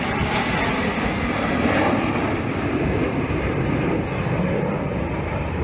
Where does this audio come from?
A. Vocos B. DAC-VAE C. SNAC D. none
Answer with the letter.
D